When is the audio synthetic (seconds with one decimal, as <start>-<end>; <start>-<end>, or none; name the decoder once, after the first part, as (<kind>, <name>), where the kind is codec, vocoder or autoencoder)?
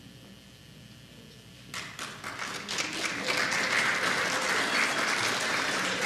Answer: 5.5-6.1 (vocoder, BigVGAN v2)